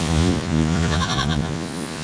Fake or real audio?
fake